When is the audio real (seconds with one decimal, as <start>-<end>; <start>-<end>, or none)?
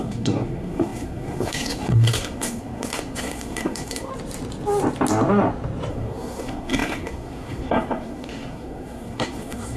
4.1-5.9